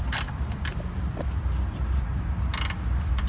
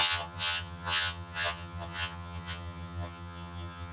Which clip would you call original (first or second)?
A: first